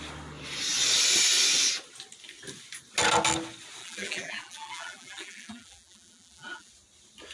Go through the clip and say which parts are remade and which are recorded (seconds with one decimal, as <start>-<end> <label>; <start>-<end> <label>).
0.0-3.8 recorded; 3.8-6.7 remade; 6.7-7.3 recorded

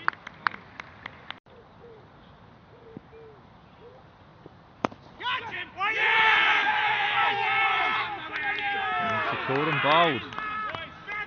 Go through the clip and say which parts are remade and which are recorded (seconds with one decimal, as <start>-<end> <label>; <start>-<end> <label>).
0.0-11.3 recorded